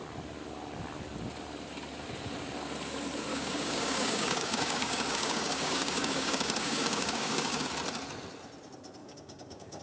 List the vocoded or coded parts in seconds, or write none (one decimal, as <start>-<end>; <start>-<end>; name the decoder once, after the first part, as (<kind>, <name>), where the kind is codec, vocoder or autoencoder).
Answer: 3.3-7.7 (codec, DAC); 9.0-9.8